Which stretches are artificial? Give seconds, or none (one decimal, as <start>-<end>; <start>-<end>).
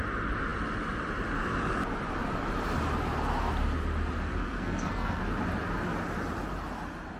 4.3-5.2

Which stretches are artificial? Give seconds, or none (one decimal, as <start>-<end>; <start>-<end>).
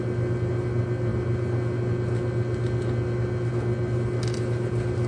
none